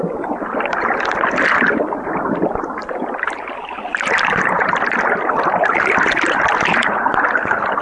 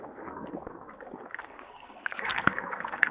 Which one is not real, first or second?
second